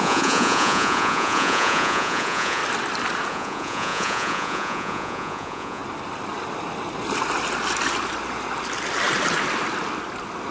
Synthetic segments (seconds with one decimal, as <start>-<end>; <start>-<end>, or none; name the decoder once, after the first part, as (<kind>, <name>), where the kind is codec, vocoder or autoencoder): 0.0-2.6 (vocoder, Vocos); 3.3-5.8